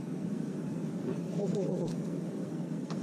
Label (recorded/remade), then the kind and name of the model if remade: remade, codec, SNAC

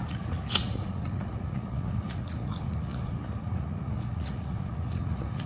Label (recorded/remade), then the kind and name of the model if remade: remade, vocoder, Vocos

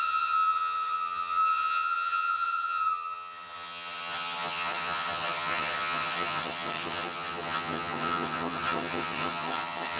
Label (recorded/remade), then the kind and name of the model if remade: remade, vocoder, HiFi-GAN